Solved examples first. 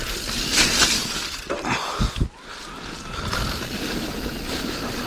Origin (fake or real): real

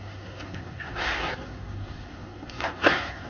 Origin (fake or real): fake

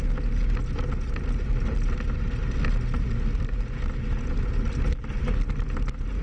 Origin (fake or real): real